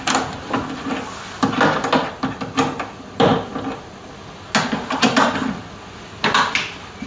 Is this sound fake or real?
real